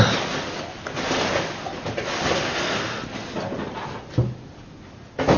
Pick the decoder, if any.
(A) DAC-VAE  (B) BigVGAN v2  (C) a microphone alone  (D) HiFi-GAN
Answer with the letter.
C